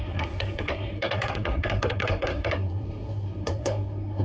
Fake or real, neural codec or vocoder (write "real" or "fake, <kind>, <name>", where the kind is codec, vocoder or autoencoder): fake, codec, SNAC